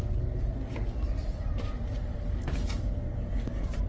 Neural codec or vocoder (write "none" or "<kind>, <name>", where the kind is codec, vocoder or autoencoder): none